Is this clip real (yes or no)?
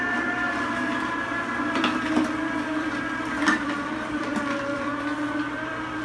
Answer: no